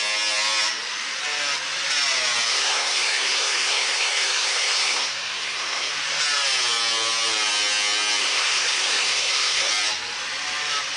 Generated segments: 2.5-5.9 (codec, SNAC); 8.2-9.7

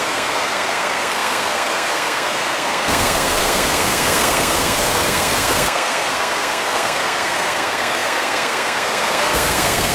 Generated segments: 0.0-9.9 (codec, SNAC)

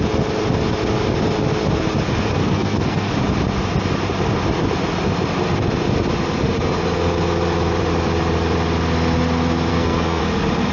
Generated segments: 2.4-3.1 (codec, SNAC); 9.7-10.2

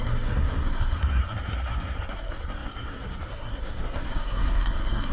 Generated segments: 0.0-5.1 (codec, SNAC)

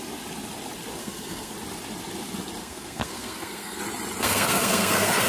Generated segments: 1.0-1.5 (codec, SNAC); 2.6-3.8; 4.2-5.3